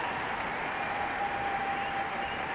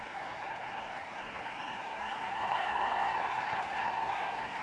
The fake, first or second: second